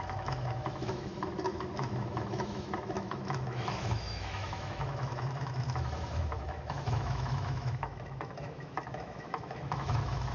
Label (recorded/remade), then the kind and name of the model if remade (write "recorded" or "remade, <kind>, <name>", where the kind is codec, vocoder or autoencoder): remade, autoencoder, DAC-VAE